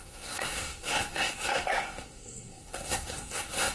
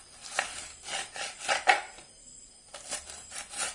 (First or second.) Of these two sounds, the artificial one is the first